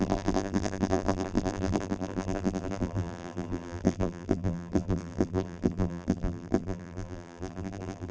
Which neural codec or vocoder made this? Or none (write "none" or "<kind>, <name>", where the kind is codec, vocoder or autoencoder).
vocoder, BigVGAN v2